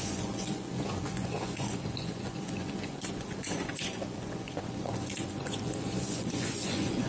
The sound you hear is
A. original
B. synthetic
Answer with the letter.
B